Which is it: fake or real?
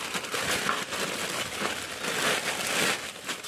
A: real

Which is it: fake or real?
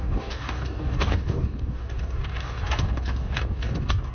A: fake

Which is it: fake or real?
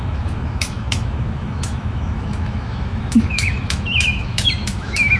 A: fake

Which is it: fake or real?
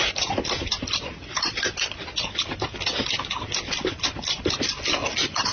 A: real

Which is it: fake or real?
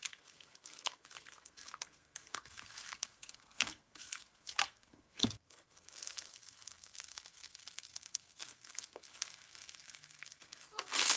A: fake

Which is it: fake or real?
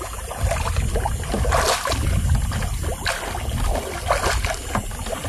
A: real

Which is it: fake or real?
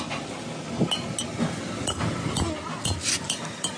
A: real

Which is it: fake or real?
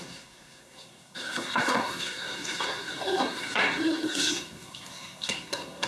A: fake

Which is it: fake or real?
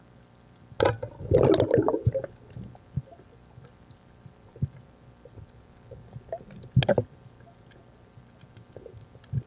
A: real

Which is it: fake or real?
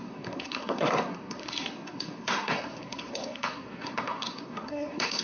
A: fake